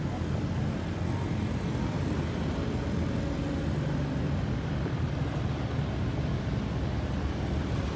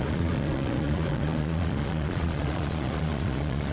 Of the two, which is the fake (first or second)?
second